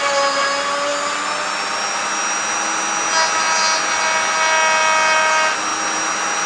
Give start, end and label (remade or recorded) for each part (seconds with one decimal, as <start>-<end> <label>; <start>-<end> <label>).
0.0-6.5 recorded